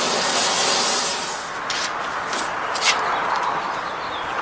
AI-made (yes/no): no